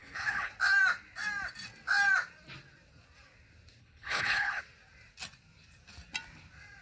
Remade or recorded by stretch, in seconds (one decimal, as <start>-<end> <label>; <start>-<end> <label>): 0.0-0.5 remade; 0.5-3.8 recorded; 3.8-4.6 remade; 4.6-6.8 recorded

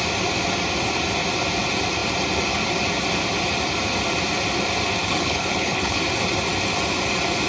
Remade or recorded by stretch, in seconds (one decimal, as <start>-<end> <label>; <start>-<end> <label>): 0.0-5.0 recorded; 5.0-6.0 remade; 6.0-7.5 recorded